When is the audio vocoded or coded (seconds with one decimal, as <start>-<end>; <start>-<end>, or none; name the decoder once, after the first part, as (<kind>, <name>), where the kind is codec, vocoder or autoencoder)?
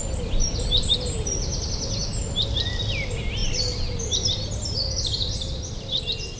none